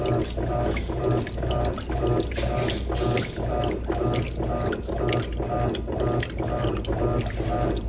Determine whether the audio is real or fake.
real